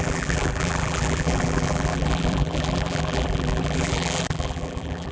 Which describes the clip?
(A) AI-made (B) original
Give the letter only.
A